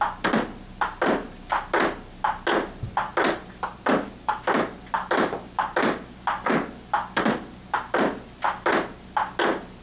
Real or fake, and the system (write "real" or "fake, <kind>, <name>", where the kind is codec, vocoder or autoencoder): real